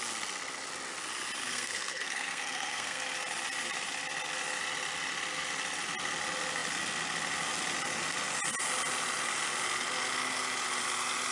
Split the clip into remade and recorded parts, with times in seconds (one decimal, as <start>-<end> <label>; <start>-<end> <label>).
0.0-1.4 recorded; 1.4-3.0 remade; 3.0-11.3 recorded